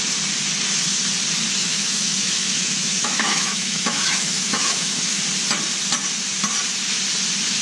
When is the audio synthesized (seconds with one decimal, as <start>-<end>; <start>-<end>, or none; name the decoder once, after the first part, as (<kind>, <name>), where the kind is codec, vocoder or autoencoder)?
1.6-5.2 (autoencoder, DAC-VAE)